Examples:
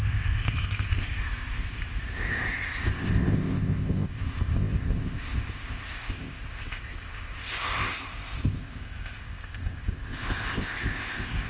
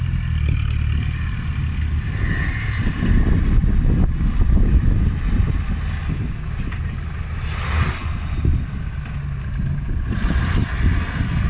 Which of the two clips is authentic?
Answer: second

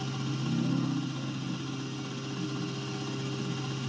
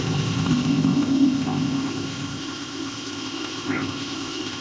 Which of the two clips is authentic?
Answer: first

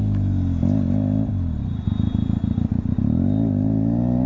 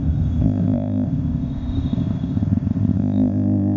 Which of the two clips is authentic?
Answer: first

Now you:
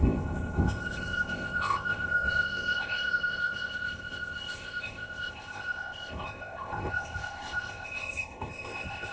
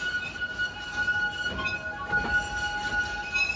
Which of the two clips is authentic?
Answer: second